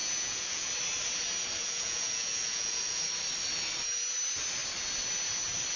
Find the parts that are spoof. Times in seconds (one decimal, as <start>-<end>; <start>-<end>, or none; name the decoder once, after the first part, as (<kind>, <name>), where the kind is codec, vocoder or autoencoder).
0.0-0.7 (vocoder, Vocos); 1.6-3.0